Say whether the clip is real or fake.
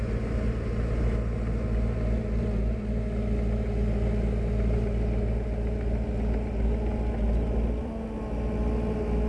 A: real